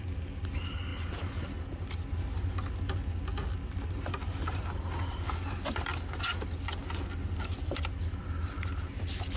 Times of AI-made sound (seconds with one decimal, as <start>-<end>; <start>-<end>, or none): none